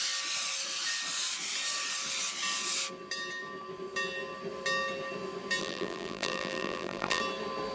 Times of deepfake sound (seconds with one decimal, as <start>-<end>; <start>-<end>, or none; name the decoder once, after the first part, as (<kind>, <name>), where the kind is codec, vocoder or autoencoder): 5.6-7.2 (vocoder, BigVGAN v2)